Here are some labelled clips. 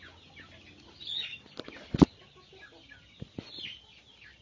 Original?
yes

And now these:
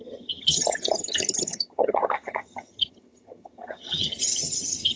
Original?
no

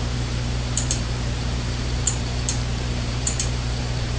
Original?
no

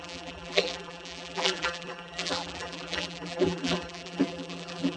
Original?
no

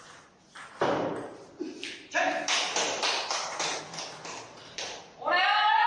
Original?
yes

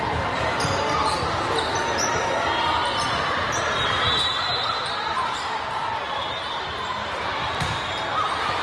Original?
no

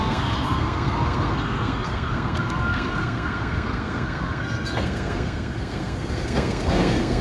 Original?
no